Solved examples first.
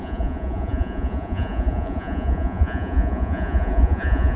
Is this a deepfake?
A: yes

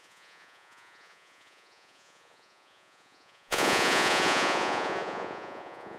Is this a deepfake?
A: yes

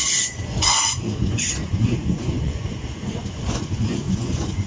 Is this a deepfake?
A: yes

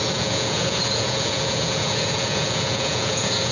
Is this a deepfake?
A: yes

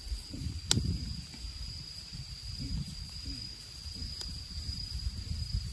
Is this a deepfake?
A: no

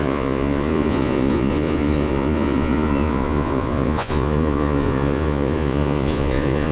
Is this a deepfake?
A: yes